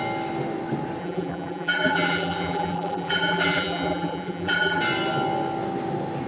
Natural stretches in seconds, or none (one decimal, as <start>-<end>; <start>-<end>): 0.0-1.0; 4.8-6.3